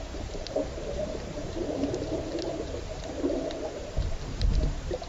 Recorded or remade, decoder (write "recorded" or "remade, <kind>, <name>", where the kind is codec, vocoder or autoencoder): remade, vocoder, BigVGAN v2